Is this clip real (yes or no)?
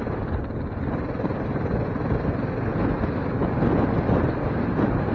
yes